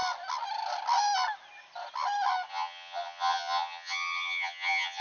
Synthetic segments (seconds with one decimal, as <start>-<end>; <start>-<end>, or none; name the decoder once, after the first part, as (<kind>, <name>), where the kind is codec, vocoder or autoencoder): 2.5-5.0 (vocoder, HiFi-GAN)